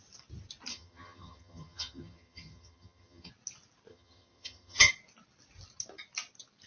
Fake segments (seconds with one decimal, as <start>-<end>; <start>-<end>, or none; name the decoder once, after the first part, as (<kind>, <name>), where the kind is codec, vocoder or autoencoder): 0.7-3.3 (vocoder, HiFi-GAN); 3.9-4.9